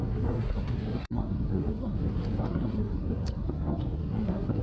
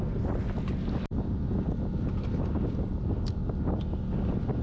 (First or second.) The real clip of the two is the second